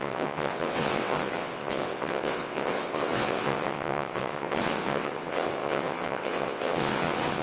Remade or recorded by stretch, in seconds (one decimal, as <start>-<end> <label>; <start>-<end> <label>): 0.0-7.4 remade